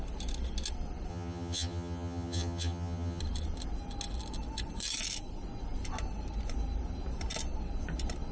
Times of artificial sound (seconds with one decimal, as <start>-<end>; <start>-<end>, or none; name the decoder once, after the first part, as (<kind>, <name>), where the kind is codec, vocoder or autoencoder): 1.1-3.2 (vocoder, HiFi-GAN)